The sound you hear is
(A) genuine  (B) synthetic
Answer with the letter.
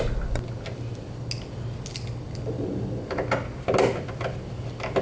A